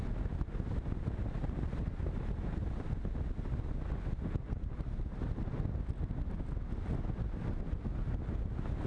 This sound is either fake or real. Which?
real